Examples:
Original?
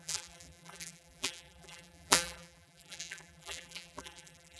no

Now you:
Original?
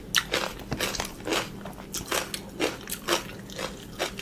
yes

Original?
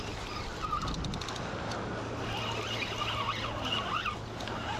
yes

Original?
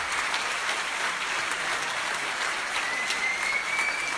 no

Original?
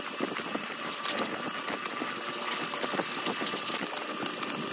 yes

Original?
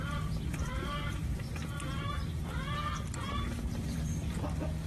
no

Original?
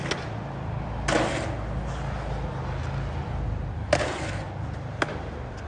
yes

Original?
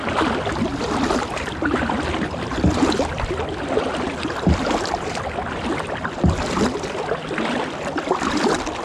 yes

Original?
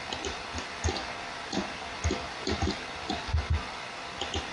yes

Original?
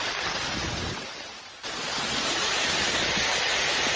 yes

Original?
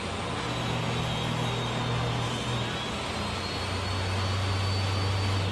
yes